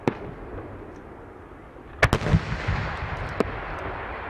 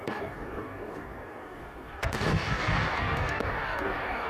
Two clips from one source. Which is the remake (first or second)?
second